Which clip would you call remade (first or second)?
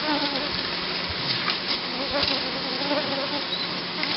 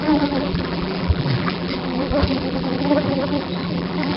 second